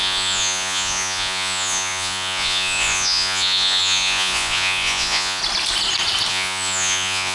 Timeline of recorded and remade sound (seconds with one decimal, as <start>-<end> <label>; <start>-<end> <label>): 0.0-5.4 remade; 5.4-6.3 recorded; 6.3-7.3 remade

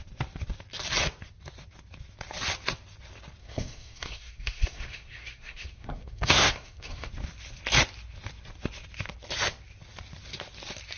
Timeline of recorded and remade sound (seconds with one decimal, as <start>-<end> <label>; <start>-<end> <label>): 0.0-3.4 recorded; 3.4-7.1 remade; 7.1-11.0 recorded